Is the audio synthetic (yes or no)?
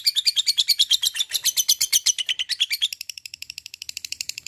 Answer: yes